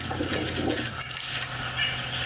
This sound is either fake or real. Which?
real